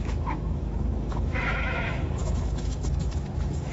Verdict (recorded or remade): remade